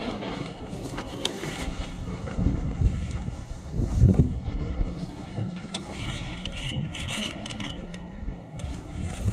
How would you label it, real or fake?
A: fake